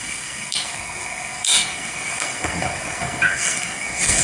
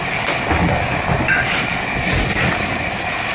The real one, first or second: second